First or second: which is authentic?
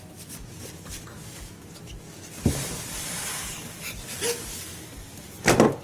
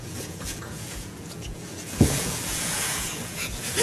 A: first